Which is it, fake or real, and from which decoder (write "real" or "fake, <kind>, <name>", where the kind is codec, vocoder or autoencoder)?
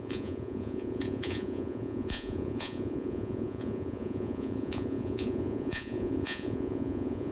fake, vocoder, Vocos